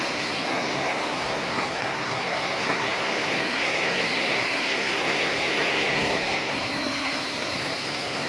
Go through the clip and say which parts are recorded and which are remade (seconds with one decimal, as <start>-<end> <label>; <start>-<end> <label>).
0.0-8.3 remade

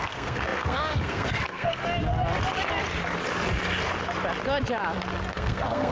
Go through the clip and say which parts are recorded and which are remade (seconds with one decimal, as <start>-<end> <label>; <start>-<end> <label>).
0.0-1.8 remade; 1.8-5.3 recorded; 5.3-5.9 remade

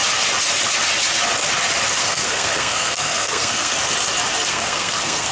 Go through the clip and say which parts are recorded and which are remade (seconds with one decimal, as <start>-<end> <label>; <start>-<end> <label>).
0.0-2.0 recorded; 2.0-3.7 remade; 3.7-4.5 recorded; 4.5-5.3 remade

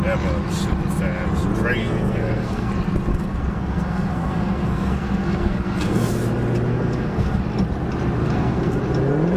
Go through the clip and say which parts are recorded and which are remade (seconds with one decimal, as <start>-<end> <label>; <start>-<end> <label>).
0.0-1.8 recorded; 1.8-2.7 remade; 2.7-3.1 recorded; 3.1-6.1 remade; 6.1-6.7 recorded; 6.7-7.4 remade; 7.4-8.2 recorded; 8.2-8.8 remade; 8.8-9.4 recorded